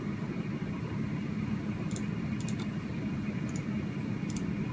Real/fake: real